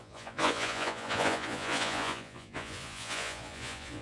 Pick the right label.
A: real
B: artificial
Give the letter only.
B